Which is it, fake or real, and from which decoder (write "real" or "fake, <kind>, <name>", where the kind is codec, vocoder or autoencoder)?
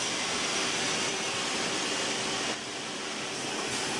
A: real